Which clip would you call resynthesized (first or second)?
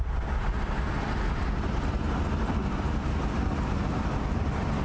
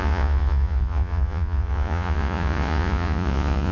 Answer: second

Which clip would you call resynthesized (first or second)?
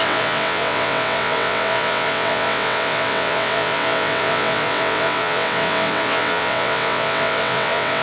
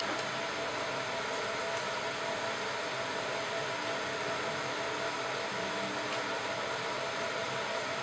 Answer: first